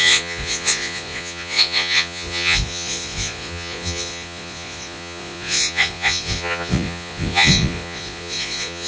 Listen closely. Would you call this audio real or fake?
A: fake